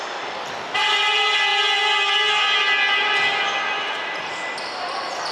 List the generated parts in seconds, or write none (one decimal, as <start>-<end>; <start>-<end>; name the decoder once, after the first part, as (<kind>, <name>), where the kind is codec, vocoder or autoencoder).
none